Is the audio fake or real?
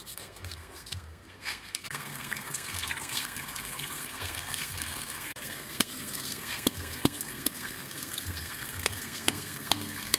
fake